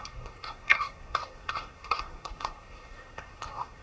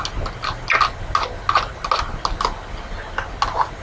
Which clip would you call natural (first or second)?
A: second